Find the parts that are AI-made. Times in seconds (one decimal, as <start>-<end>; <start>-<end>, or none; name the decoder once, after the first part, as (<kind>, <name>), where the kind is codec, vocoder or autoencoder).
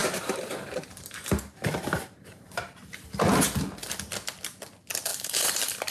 0.0-3.5 (vocoder, BigVGAN v2); 5.1-5.9